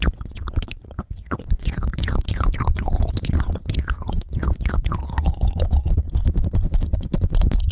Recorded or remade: remade